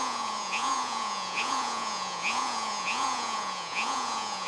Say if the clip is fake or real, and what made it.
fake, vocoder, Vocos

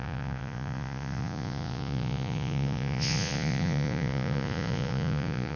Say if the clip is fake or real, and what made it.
fake, vocoder, Vocos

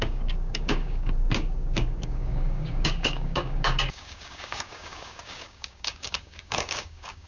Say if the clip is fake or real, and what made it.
fake, codec, DAC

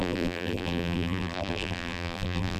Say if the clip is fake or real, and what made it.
fake, vocoder, BigVGAN v2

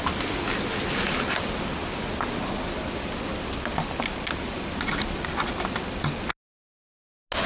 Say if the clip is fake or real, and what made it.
real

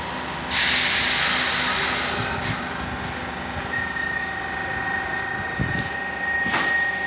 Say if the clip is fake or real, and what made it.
real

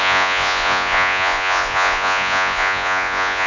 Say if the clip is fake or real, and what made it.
fake, vocoder, Vocos